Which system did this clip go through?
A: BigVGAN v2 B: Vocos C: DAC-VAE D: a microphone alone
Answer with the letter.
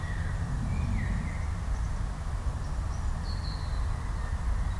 D